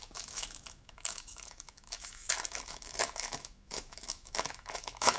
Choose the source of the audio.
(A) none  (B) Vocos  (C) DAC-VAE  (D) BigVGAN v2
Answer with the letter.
C